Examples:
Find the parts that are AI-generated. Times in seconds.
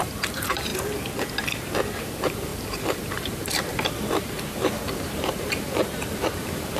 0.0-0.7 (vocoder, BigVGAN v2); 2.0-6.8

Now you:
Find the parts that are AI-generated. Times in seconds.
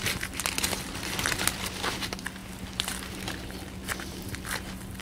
1.0-5.0 (vocoder, BigVGAN v2)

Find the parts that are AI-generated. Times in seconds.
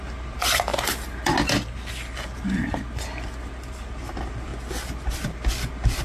0.0-0.7 (vocoder, BigVGAN v2); 3.5-4.5